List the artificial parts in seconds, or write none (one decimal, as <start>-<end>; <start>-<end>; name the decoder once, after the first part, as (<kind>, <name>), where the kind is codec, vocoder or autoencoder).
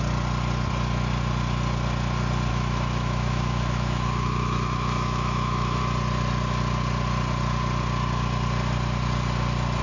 2.5-5.8 (autoencoder, DAC-VAE)